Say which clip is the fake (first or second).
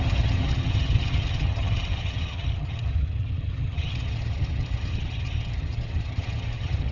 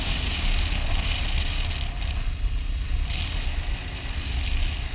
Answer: first